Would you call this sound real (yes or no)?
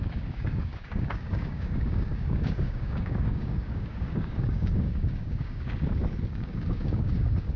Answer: no